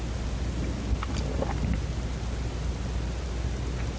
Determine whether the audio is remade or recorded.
recorded